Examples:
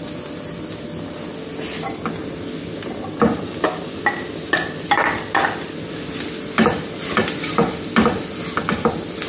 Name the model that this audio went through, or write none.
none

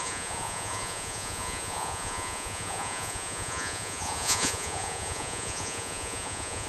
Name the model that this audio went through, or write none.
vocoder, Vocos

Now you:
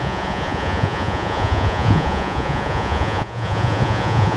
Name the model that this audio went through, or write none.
vocoder, Vocos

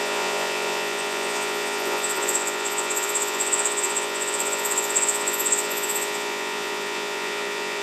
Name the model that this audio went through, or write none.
vocoder, Vocos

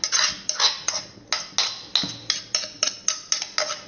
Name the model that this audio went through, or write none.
none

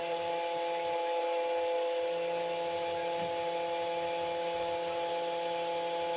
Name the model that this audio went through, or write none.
none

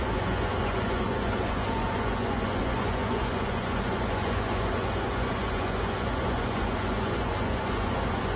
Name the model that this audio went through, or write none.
vocoder, Vocos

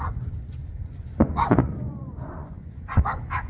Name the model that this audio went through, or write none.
vocoder, Vocos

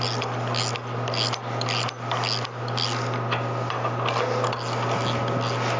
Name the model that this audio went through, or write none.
none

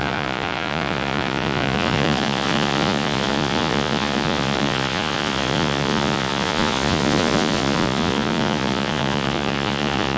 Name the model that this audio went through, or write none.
vocoder, Vocos